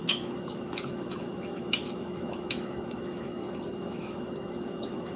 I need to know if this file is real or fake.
fake